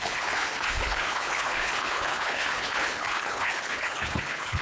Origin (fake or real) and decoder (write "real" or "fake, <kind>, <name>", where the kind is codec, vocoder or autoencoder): fake, codec, HILCodec